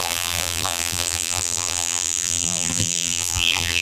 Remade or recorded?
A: remade